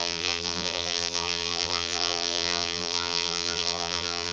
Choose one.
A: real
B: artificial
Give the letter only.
B